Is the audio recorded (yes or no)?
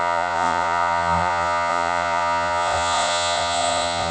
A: no